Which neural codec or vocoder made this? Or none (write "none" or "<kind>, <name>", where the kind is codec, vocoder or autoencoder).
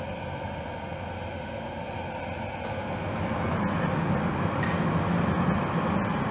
none